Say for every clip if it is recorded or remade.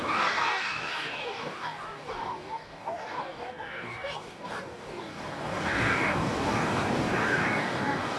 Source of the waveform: remade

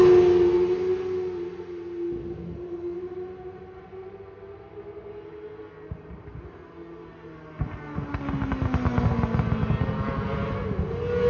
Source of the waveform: recorded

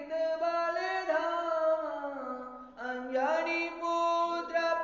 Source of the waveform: recorded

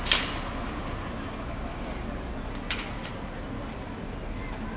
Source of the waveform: recorded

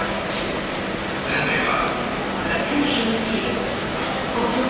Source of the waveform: recorded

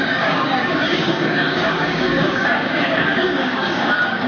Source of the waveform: remade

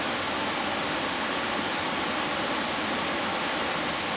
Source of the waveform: recorded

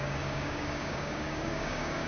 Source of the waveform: remade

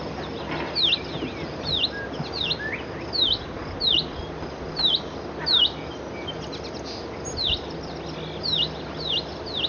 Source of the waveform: recorded